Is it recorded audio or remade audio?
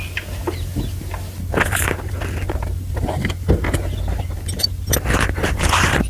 recorded